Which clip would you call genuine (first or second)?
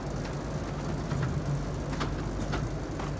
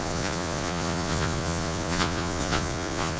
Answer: first